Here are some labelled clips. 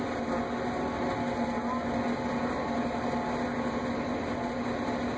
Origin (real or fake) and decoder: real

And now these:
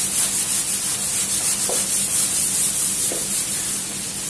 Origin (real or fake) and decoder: real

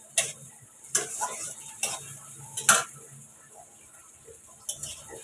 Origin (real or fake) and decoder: real